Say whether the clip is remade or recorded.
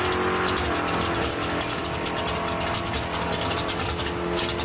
recorded